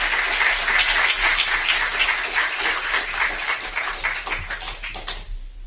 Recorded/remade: recorded